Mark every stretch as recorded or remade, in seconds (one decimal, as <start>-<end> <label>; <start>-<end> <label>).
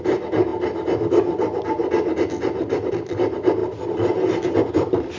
0.0-0.5 remade; 0.5-2.9 recorded; 2.9-5.2 remade